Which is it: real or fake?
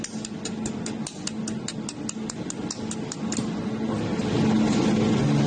real